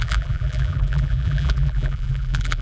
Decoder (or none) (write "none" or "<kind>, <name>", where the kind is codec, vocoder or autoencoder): vocoder, BigVGAN v2